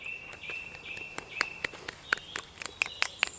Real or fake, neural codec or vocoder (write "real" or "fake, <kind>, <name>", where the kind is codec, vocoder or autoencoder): real